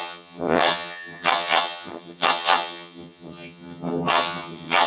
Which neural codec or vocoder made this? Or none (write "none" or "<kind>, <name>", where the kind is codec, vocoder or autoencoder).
vocoder, HiFi-GAN